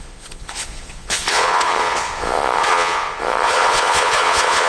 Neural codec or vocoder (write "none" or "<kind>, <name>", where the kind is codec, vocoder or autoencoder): vocoder, Vocos